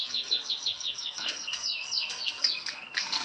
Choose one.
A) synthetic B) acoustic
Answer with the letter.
A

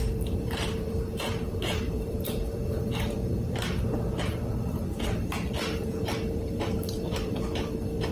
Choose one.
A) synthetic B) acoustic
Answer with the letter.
A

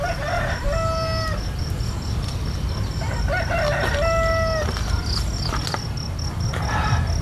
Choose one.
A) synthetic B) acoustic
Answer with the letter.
B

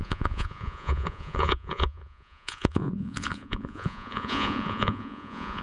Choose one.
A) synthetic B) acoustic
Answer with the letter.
A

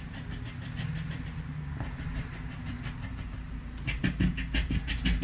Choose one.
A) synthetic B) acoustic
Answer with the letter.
B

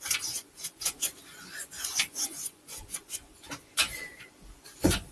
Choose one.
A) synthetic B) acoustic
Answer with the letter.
A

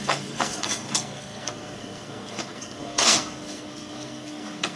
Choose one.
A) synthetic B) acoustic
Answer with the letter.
A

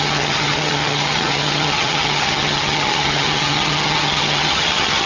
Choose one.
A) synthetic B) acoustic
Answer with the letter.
A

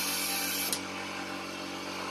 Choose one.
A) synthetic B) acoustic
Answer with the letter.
B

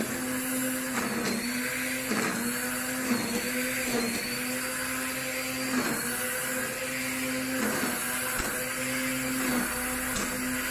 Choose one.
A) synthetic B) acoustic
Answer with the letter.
B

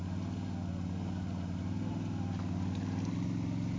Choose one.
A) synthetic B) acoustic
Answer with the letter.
B